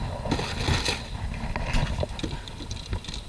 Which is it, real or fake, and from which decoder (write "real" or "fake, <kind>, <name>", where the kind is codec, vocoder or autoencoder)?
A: real